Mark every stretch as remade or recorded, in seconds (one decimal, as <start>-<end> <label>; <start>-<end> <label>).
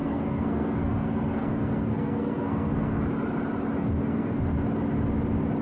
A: 0.0-3.0 remade; 3.0-3.8 recorded; 3.8-4.4 remade; 4.4-5.6 recorded